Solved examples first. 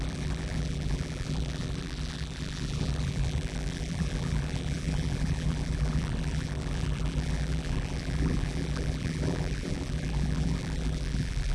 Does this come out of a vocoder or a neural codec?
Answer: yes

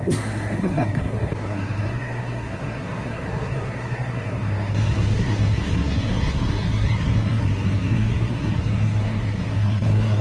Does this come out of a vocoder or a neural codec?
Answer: yes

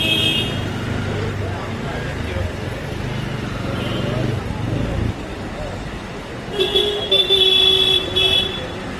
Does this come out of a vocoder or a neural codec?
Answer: no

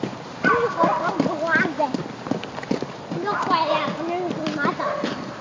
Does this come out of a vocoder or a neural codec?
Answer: no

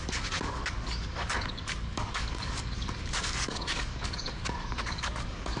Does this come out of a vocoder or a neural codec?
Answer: yes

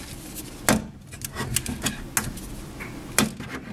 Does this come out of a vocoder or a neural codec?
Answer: no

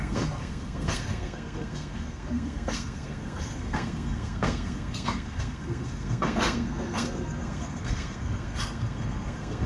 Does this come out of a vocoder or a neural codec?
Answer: yes